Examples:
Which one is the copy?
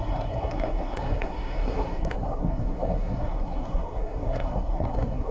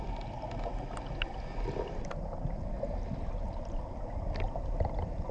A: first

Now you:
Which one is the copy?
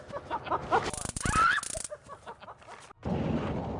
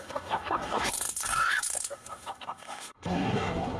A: second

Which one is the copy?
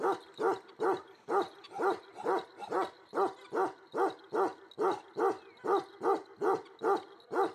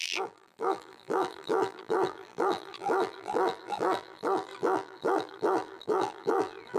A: second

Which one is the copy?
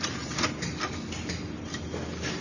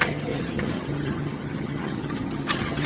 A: second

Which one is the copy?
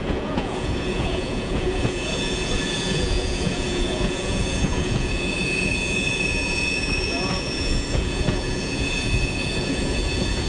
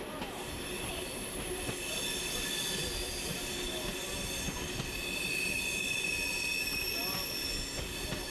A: first